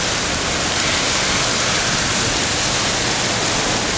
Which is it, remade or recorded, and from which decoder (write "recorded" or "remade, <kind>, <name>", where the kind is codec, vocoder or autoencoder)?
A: recorded